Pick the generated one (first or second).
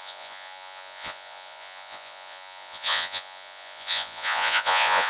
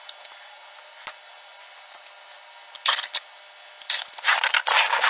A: first